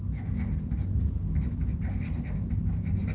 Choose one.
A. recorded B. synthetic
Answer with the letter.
A